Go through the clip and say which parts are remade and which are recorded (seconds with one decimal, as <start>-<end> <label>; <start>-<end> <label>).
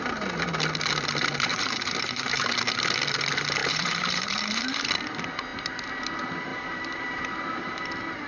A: 0.0-1.5 recorded; 1.5-2.4 remade; 2.4-3.6 recorded; 3.6-4.9 remade; 4.9-6.5 recorded; 6.5-7.9 remade; 7.9-8.3 recorded